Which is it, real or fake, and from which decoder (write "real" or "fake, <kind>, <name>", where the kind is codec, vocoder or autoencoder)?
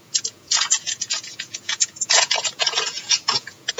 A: fake, vocoder, Vocos